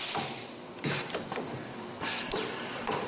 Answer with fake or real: real